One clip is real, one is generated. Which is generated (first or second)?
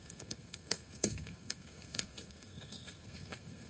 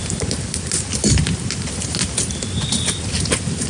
first